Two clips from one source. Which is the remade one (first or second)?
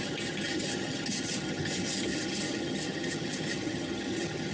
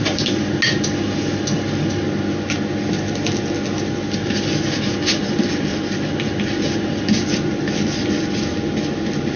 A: first